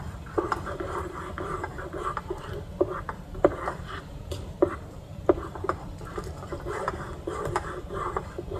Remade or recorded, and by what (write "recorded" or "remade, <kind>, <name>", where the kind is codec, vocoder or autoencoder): remade, vocoder, BigVGAN v2